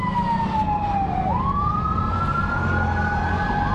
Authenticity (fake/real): real